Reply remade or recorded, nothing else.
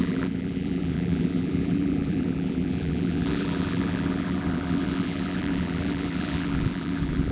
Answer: remade